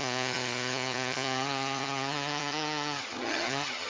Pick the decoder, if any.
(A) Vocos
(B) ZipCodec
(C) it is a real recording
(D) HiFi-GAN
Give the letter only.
D